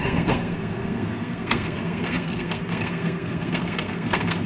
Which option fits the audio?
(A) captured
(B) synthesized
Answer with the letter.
B